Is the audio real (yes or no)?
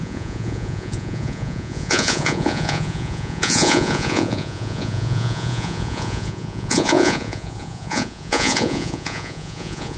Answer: no